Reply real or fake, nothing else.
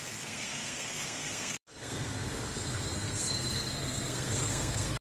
fake